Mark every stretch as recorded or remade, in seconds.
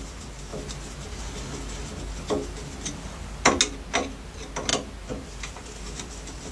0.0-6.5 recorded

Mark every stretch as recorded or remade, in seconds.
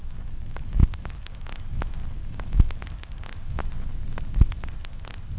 0.0-3.6 remade; 3.6-5.4 recorded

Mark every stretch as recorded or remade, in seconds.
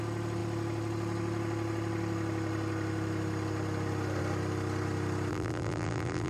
0.0-5.3 recorded; 5.3-6.3 remade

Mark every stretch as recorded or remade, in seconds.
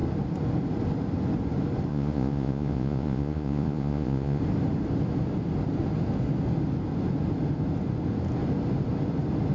0.0-1.9 recorded; 1.9-4.4 remade; 4.4-9.5 recorded